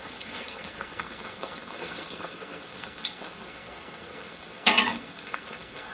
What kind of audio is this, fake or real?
fake